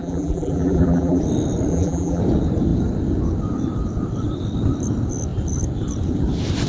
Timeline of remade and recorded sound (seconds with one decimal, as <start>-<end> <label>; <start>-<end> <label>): 0.0-1.2 remade; 1.2-1.7 recorded; 1.7-2.2 remade; 2.2-6.7 recorded